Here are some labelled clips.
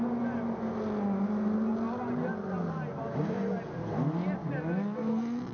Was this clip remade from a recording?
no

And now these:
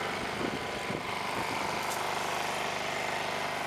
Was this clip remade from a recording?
no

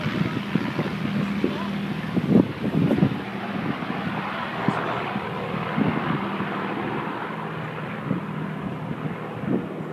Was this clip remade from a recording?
no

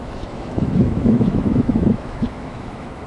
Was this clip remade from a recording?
yes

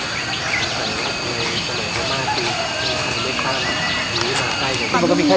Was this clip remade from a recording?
no